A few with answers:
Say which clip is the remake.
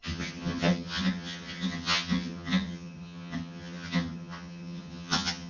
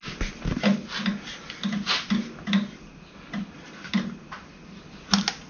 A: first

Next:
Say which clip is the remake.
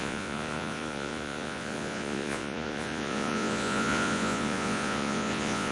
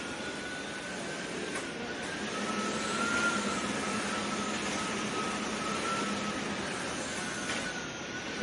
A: first